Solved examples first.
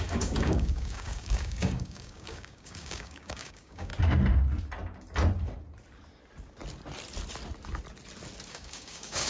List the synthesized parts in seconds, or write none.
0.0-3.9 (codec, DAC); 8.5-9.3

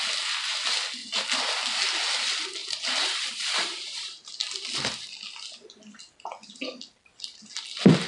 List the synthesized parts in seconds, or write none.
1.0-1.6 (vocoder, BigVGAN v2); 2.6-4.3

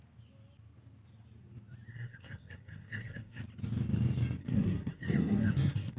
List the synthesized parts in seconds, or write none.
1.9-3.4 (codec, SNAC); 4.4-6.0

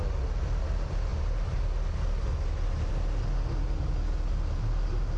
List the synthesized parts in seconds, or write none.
none